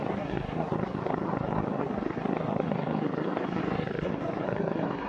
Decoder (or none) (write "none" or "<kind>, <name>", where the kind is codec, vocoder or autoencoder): codec, SNAC